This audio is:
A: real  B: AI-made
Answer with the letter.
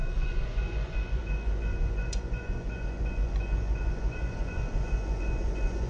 B